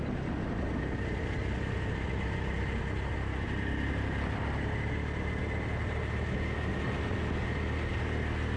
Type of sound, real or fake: real